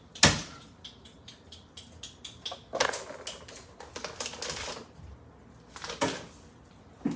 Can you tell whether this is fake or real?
real